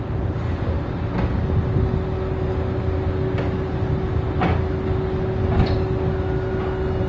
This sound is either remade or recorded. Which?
recorded